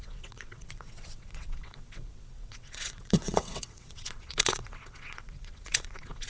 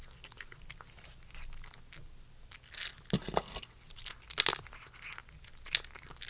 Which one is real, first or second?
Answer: second